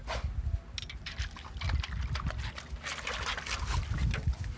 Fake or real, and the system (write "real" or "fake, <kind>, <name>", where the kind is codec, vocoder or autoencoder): real